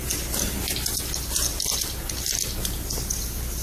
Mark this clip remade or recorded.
recorded